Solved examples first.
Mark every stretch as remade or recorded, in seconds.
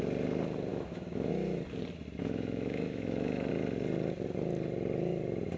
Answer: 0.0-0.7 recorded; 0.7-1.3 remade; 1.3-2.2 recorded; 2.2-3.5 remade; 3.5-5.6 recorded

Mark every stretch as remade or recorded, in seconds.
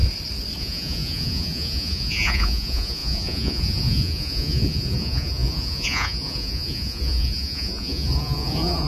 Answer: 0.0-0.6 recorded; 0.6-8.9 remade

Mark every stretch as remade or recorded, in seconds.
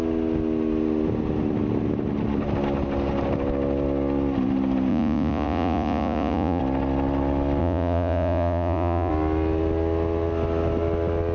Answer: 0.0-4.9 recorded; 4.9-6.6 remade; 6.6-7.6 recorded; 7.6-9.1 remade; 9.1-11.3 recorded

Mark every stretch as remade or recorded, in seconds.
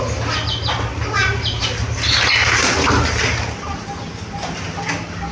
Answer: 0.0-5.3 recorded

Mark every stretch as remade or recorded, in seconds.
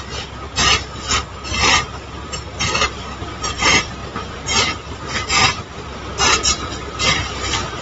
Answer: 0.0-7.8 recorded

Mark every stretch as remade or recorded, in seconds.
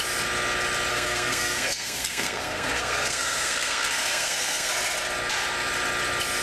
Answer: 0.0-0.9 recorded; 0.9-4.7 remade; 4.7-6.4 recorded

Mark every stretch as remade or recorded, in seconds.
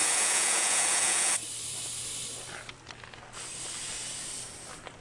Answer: 0.0-1.3 remade; 1.3-5.0 recorded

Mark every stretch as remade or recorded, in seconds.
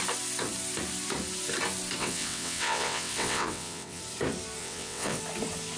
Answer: 0.0-2.0 recorded; 2.0-4.0 remade; 4.0-4.6 recorded; 4.6-5.2 remade; 5.2-5.8 recorded